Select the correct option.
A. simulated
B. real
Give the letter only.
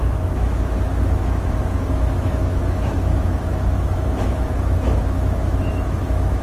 A